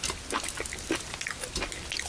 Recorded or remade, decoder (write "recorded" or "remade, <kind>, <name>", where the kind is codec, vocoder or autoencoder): recorded